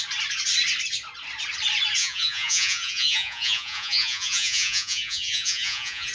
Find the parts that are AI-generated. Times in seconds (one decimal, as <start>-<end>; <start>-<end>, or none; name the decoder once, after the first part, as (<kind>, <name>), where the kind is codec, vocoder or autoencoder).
2.0-6.1 (vocoder, Vocos)

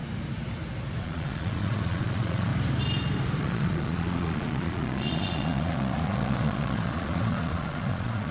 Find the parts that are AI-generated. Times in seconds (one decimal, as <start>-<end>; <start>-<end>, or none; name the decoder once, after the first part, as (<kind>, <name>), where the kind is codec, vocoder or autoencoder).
1.0-2.5 (vocoder, Vocos); 3.4-8.3

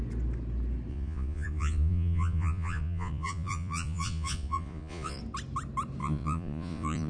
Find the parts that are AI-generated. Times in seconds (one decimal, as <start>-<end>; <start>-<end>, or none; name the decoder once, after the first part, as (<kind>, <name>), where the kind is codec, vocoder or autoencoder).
0.9-5.2 (vocoder, Vocos); 6.0-7.1